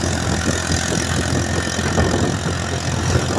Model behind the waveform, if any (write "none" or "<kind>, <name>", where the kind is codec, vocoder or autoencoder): none